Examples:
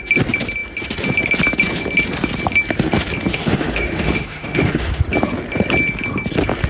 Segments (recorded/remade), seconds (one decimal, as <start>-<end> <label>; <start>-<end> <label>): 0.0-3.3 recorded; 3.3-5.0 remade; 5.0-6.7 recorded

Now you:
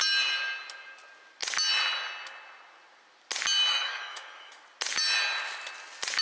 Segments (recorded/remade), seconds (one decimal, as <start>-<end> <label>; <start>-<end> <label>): 0.0-3.7 recorded; 3.7-4.6 remade; 4.6-6.2 recorded

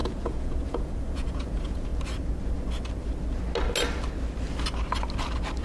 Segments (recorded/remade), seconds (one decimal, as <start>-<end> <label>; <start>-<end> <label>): 0.0-1.9 remade; 1.9-5.6 recorded

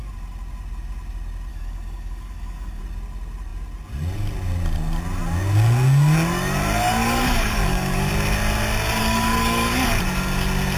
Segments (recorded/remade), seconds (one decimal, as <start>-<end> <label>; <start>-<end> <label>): 0.0-1.5 recorded; 1.5-2.8 remade; 2.8-7.0 recorded; 7.0-8.1 remade; 8.1-9.0 recorded; 9.0-9.9 remade; 9.9-10.8 recorded